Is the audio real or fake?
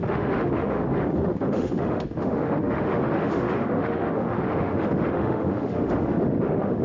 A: fake